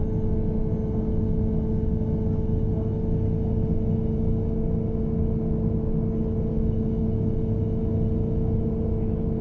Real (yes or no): yes